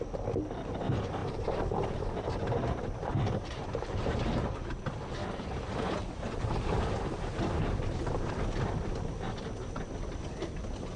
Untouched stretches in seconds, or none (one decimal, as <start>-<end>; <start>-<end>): 0.0-1.2; 4.7-6.0; 7.9-11.0